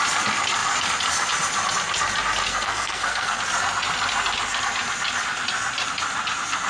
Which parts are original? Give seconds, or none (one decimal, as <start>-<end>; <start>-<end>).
0.0-2.5; 3.4-6.7